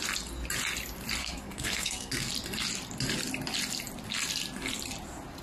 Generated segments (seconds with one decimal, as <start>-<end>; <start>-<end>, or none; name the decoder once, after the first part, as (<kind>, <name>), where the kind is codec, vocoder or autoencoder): 1.2-2.3 (codec, SNAC)